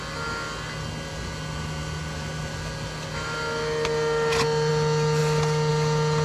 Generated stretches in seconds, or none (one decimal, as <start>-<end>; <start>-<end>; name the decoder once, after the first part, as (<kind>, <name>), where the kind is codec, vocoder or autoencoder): none

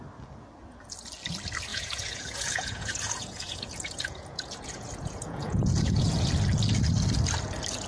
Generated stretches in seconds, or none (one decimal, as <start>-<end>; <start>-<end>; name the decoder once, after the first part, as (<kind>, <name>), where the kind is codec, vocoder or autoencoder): 1.7-6.3 (vocoder, Vocos)